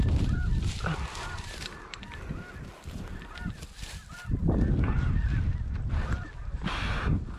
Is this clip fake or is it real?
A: real